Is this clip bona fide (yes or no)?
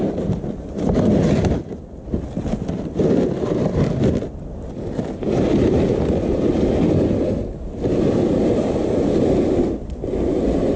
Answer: yes